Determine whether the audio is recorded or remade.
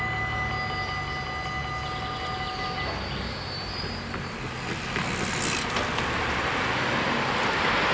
recorded